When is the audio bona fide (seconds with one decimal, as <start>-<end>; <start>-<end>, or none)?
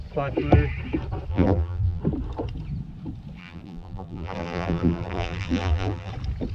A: 0.0-1.3; 2.0-3.4; 6.1-6.5